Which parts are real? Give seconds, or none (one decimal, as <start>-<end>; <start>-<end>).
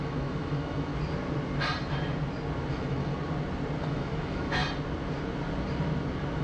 0.9-2.7; 3.1-3.8; 4.6-6.4